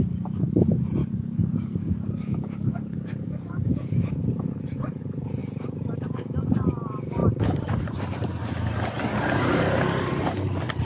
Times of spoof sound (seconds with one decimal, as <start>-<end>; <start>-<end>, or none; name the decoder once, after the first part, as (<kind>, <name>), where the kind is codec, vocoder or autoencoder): 1.0-5.0 (codec, DAC)